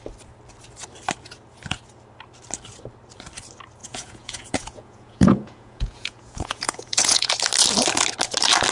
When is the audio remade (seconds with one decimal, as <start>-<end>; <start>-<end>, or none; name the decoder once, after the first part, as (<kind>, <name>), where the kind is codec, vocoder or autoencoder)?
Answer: 3.8-7.3 (vocoder, Vocos)